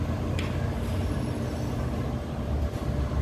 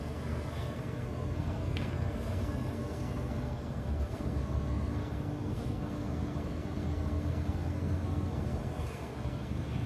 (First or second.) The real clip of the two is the first